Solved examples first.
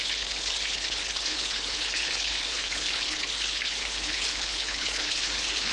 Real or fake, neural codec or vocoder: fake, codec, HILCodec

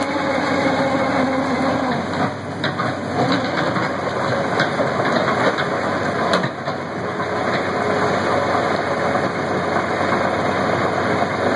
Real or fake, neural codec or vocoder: real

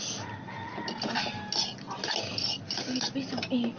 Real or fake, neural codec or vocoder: real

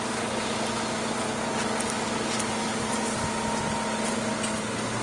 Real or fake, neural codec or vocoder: real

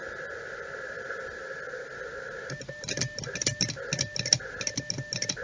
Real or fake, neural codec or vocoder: real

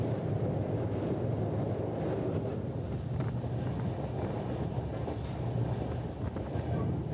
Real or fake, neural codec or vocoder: real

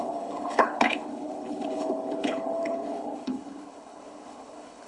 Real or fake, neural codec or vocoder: fake, codec, HILCodec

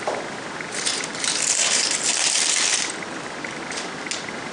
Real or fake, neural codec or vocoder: real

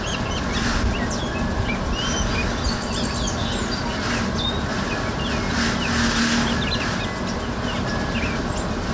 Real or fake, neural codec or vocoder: real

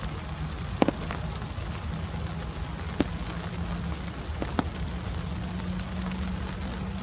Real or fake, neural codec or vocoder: real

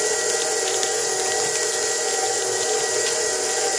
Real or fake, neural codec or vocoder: real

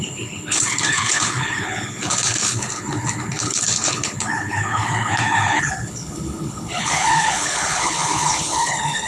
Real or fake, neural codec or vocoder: fake, codec, HILCodec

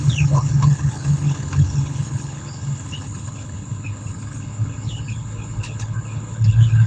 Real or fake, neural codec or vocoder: fake, codec, HILCodec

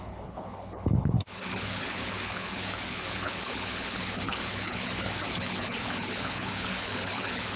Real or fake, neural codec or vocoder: fake, codec, HILCodec